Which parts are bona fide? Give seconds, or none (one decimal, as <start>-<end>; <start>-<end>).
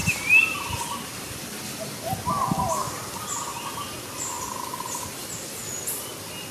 0.0-6.5